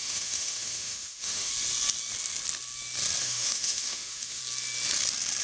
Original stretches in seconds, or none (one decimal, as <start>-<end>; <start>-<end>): 1.5-3.2; 4.4-5.4

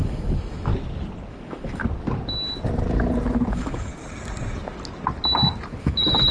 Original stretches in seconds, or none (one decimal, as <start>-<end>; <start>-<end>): 0.7-1.3; 1.8-3.5; 3.9-5.8